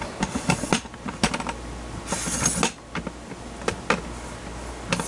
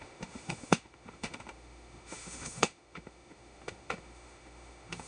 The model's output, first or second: second